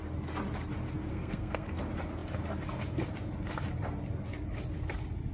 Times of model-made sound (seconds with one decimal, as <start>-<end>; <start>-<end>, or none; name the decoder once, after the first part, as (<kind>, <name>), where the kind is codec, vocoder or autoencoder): 1.1-1.8 (codec, SNAC)